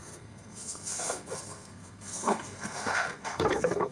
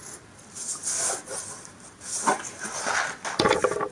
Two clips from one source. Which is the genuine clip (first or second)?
second